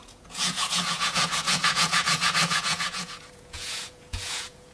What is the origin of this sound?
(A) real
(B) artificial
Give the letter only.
B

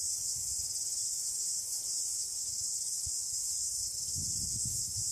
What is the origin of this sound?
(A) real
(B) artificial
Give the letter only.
A